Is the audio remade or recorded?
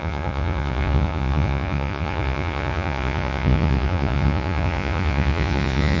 remade